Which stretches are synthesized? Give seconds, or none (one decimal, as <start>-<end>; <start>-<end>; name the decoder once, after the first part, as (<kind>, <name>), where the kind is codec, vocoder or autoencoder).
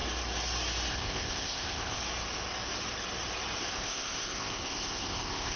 0.9-2.0 (codec, ZipCodec); 3.6-5.6